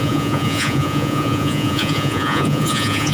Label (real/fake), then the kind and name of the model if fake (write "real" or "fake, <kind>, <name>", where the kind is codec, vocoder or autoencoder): fake, vocoder, Vocos